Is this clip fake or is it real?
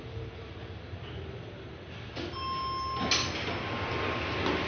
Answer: real